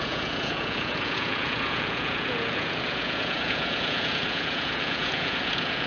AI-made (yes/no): yes